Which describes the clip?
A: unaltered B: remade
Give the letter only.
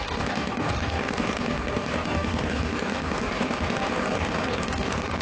B